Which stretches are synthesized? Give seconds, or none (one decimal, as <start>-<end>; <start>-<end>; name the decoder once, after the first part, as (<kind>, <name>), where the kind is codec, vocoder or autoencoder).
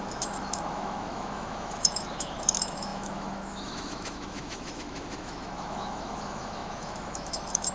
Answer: 0.0-7.7 (autoencoder, DAC-VAE)